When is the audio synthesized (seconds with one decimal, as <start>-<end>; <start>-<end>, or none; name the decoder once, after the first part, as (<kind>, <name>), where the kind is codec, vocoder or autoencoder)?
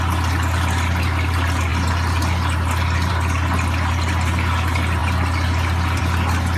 none